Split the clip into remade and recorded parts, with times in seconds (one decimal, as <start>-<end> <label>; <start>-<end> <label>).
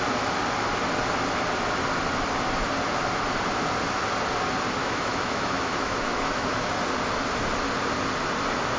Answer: 0.0-4.8 recorded; 4.8-6.7 remade; 6.7-8.8 recorded